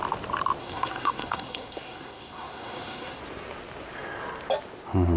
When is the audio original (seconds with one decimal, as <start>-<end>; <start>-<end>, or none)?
0.0-0.6; 3.2-5.2